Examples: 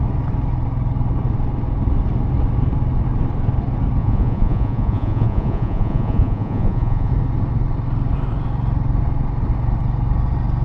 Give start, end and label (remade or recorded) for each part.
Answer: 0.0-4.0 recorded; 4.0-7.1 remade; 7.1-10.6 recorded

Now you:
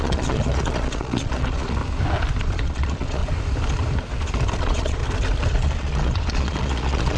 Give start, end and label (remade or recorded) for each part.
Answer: 0.0-1.8 remade; 1.8-2.4 recorded; 2.4-3.2 remade; 3.2-4.6 recorded; 4.6-5.0 remade; 5.0-5.5 recorded; 5.5-7.2 remade

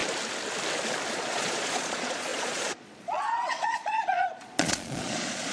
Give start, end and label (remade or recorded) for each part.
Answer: 0.0-1.1 recorded; 1.1-5.5 remade

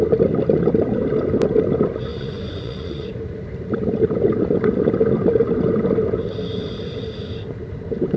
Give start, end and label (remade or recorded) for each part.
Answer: 0.0-2.1 recorded; 2.1-3.1 remade; 3.1-8.2 recorded

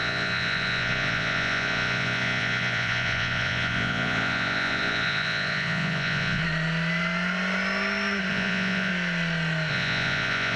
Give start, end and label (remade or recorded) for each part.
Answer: 0.0-6.4 remade; 6.4-8.3 recorded; 8.3-8.9 remade; 8.9-9.7 recorded; 9.7-10.6 remade

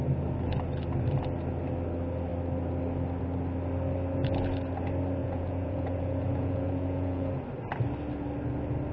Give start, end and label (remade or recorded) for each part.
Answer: 0.0-5.2 recorded; 5.2-7.3 remade; 7.3-8.9 recorded

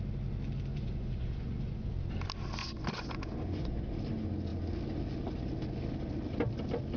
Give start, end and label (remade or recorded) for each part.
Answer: 0.0-0.7 recorded; 0.7-1.9 remade; 1.9-2.6 recorded; 2.6-3.9 remade; 3.9-7.0 recorded